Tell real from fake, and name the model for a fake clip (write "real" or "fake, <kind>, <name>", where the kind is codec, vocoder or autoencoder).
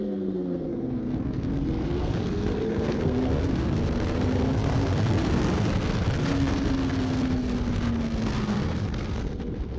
fake, codec, SNAC